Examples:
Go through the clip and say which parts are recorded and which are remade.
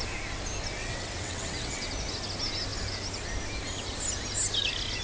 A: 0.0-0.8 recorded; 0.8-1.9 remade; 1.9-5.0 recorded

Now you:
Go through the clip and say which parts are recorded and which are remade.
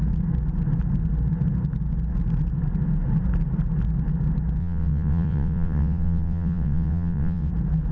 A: 0.0-4.6 recorded; 4.6-7.5 remade; 7.5-7.9 recorded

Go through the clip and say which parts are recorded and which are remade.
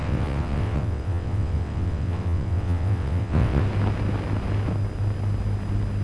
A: 0.0-3.6 remade; 3.6-6.0 recorded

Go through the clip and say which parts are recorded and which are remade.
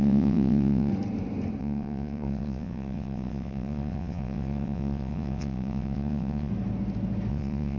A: 0.0-0.9 remade; 0.9-1.6 recorded; 1.6-6.5 remade; 6.5-7.3 recorded; 7.3-7.8 remade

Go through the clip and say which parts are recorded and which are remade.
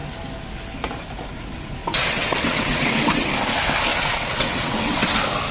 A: 0.0-1.8 recorded; 1.8-3.3 remade; 3.3-3.9 recorded; 3.9-5.1 remade; 5.1-5.5 recorded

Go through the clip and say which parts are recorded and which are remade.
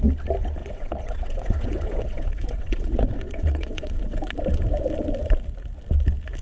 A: 0.0-0.6 recorded; 0.6-4.4 remade; 4.4-6.4 recorded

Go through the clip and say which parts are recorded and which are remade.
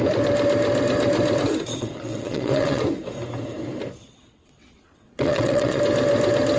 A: 0.0-1.8 recorded; 1.8-2.8 remade; 2.8-4.0 recorded; 4.0-5.8 remade; 5.8-6.6 recorded